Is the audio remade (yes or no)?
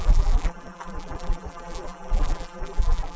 yes